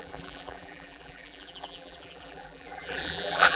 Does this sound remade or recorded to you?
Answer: remade